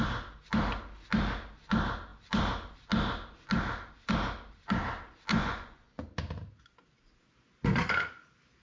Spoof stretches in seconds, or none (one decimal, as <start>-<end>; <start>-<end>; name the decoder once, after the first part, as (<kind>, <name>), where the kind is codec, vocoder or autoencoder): 5.3-6.0 (vocoder, Vocos)